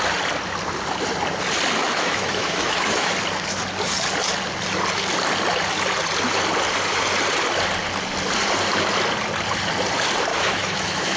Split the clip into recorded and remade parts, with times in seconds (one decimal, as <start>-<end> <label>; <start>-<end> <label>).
0.0-1.8 recorded; 1.8-3.1 remade; 3.1-10.3 recorded; 10.3-11.2 remade